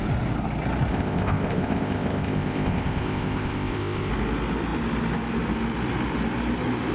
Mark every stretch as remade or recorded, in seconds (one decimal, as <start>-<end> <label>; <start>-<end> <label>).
0.0-0.9 recorded; 0.9-4.1 remade; 4.1-6.9 recorded